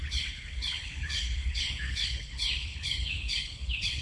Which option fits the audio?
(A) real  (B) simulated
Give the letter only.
B